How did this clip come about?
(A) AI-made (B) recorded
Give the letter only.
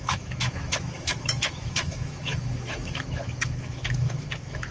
A